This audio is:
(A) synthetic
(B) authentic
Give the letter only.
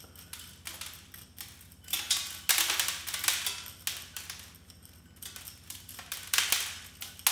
B